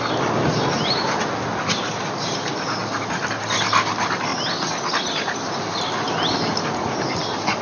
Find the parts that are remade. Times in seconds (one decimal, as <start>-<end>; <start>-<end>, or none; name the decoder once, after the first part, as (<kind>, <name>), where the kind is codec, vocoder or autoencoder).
none